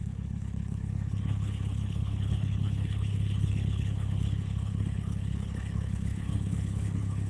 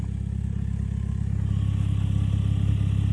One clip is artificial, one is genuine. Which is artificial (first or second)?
first